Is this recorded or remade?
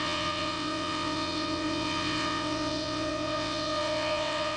remade